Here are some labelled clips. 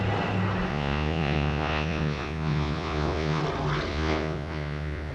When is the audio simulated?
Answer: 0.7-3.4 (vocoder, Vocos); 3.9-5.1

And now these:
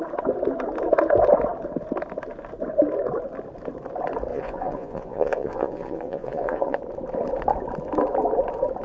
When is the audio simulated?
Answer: 4.3-6.8 (vocoder, Vocos)